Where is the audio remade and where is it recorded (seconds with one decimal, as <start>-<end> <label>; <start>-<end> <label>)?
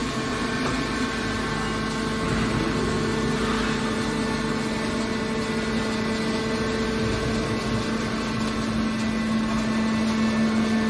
0.0-1.5 remade; 1.5-10.9 recorded